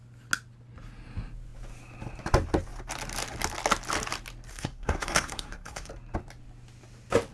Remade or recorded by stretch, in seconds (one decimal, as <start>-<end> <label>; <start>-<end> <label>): 0.0-4.5 recorded; 4.5-5.9 remade; 5.9-7.3 recorded